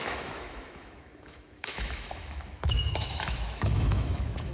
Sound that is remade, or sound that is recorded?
remade